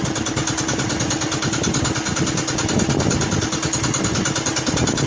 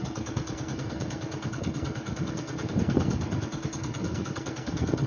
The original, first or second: first